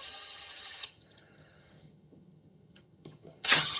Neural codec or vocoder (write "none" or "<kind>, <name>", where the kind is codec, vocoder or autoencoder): vocoder, HiFi-GAN